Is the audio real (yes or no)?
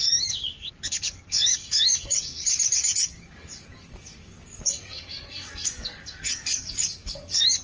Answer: no